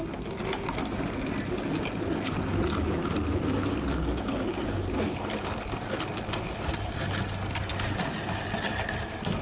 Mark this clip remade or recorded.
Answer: recorded